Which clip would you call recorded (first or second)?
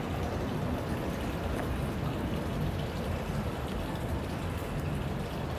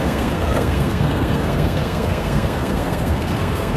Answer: first